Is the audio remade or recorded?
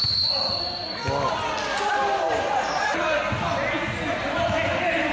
recorded